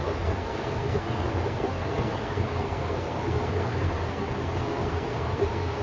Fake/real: fake